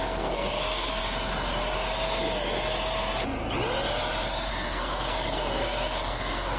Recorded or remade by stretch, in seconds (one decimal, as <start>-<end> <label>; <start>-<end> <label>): 0.0-1.0 remade; 1.0-4.5 recorded; 4.5-6.6 remade